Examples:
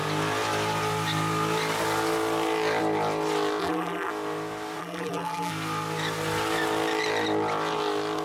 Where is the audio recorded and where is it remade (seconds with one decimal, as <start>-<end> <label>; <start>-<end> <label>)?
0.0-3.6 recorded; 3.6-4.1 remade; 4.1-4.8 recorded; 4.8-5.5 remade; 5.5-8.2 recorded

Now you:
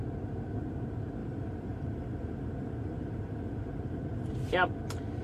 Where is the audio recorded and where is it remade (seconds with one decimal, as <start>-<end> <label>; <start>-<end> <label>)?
0.0-1.2 recorded; 1.2-4.3 remade; 4.3-5.2 recorded

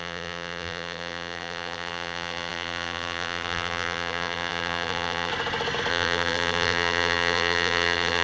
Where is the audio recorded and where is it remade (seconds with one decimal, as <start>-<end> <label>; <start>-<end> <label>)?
0.0-5.3 remade; 5.3-5.9 recorded; 5.9-8.2 remade

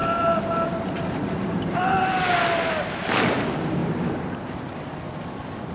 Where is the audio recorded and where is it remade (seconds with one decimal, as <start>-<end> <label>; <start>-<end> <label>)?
0.0-3.8 recorded; 3.8-4.7 remade; 4.7-5.7 recorded